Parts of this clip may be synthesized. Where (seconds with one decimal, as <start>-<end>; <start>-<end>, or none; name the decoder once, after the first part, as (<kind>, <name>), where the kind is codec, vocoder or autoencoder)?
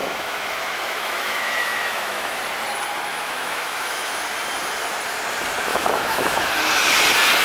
0.0-2.4 (autoencoder, DAC-VAE); 3.1-4.1; 5.7-6.5